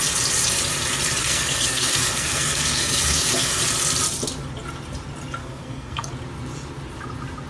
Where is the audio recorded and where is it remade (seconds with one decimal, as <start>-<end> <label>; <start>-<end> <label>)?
0.0-1.2 recorded; 1.2-3.6 remade; 3.6-5.4 recorded; 5.4-6.1 remade; 6.1-7.5 recorded